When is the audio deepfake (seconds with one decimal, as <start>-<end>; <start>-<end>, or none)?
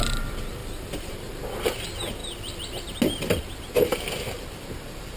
0.6-1.1